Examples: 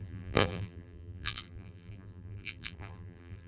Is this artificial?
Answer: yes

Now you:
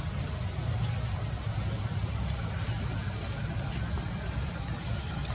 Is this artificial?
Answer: no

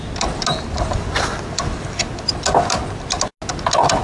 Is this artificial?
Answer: no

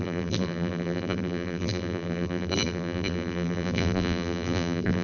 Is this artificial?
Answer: yes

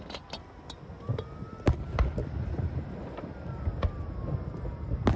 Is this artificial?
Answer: no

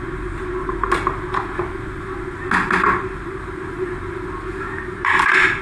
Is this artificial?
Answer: no